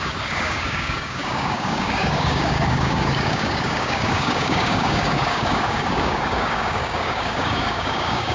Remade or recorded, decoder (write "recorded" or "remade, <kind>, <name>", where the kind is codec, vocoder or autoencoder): remade, codec, DAC